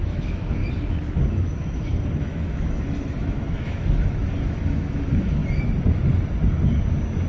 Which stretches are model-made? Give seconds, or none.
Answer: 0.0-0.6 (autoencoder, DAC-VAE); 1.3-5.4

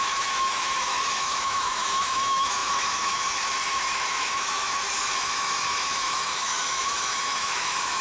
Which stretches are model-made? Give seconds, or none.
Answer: 0.0-8.0 (autoencoder, DAC-VAE)

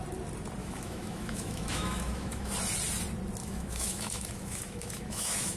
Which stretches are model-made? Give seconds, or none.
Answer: 0.6-2.5 (autoencoder, DAC-VAE); 3.4-5.6